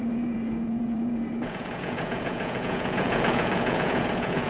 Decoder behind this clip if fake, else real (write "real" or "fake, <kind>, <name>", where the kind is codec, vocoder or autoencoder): fake, vocoder, Vocos